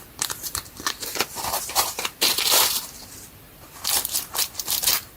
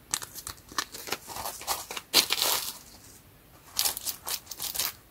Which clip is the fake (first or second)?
first